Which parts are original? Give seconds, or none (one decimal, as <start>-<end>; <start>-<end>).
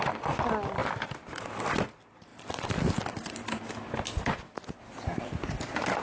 0.0-6.0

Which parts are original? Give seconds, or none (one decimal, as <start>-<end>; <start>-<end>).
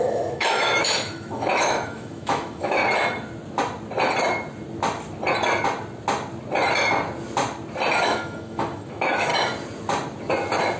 2.8-8.0; 9.3-10.8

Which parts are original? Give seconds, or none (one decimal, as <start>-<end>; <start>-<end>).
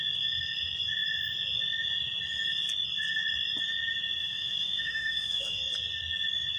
0.0-4.2; 5.6-6.6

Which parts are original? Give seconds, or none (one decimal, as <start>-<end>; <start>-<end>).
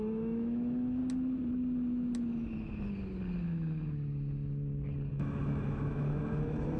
1.0-5.1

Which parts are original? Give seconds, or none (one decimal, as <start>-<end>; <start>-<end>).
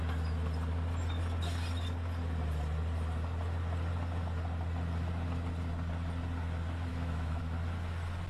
0.0-6.9; 7.4-8.3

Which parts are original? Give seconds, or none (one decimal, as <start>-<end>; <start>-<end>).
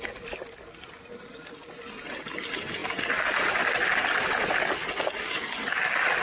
0.0-6.2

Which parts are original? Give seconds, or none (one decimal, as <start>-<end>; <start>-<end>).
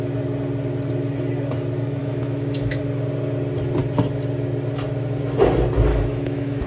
0.0-2.0; 2.8-5.9